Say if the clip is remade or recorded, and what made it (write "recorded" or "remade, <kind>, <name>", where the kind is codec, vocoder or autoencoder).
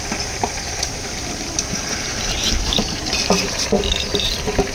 remade, vocoder, BigVGAN v2